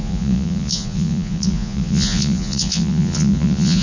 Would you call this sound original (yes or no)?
no